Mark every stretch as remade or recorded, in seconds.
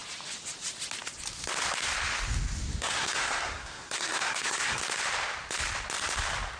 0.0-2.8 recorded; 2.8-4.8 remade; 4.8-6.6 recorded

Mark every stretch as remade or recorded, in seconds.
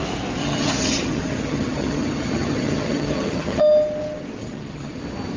0.0-0.4 recorded; 0.4-3.6 remade; 3.6-4.4 recorded; 4.4-5.0 remade; 5.0-5.4 recorded